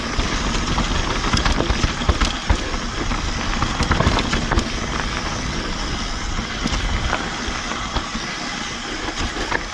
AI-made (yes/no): no